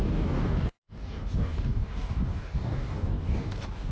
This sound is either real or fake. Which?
fake